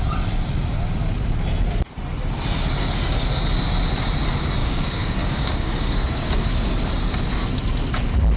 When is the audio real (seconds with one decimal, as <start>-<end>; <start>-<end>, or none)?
0.0-4.6; 6.9-8.4

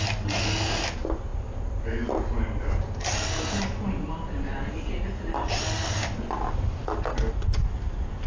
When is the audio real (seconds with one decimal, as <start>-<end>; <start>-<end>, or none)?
0.0-8.3

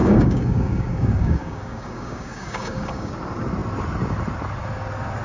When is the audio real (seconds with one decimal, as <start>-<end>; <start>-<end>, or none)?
3.1-5.2

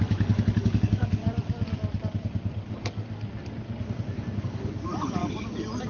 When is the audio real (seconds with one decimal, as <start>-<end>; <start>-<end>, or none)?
1.2-4.4; 5.2-5.9

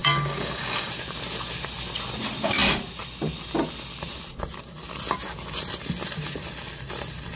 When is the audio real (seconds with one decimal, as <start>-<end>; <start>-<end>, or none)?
0.9-7.4

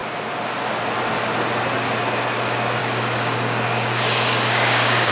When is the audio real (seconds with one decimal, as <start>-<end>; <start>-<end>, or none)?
0.0-2.8

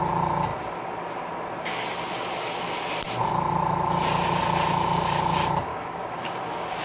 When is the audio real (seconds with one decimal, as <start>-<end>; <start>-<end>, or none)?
0.0-5.7

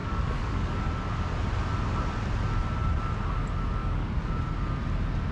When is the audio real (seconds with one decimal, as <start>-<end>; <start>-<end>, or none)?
0.8-3.8; 4.3-5.3